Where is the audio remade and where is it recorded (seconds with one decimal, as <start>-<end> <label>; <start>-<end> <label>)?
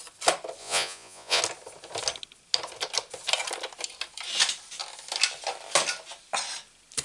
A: 0.0-0.6 recorded; 0.6-1.4 remade; 1.4-7.0 recorded